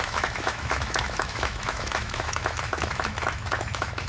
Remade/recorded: remade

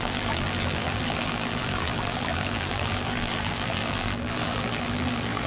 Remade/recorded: remade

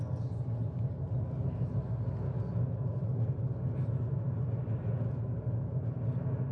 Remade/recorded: recorded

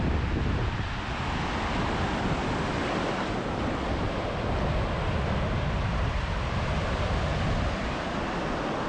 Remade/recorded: recorded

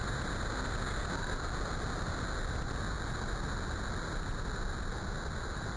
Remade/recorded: recorded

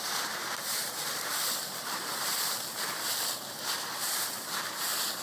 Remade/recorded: remade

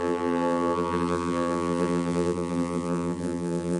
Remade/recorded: remade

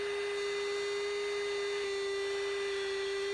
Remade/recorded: recorded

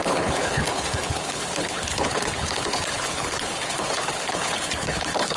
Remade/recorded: remade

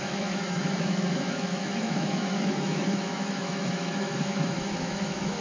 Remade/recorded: remade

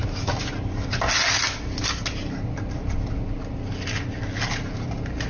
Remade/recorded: recorded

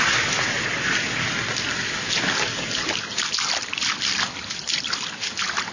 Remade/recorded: recorded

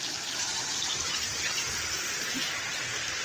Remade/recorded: recorded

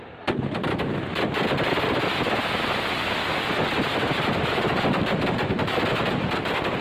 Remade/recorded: recorded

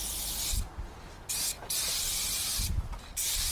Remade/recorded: recorded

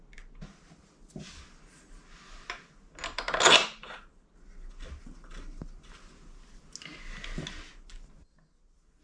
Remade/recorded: recorded